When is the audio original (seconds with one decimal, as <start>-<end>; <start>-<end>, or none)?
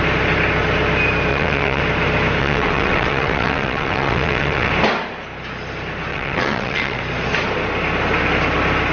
0.0-1.3; 1.8-2.4; 4.7-6.1; 7.0-8.9